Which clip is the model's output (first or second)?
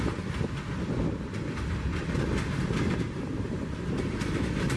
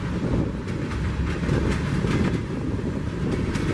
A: first